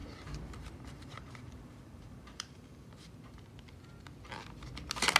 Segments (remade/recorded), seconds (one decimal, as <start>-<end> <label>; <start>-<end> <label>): 0.0-3.1 remade; 3.1-5.2 recorded